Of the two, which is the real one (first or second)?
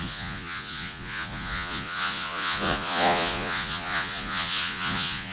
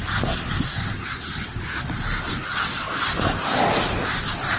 second